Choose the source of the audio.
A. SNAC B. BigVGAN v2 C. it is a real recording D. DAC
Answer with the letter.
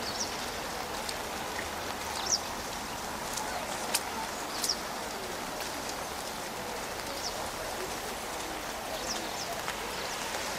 C